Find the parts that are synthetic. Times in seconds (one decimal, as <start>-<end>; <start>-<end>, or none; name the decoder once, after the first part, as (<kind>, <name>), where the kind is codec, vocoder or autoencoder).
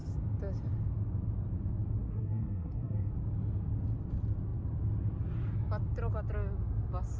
2.1-3.1 (codec, SNAC)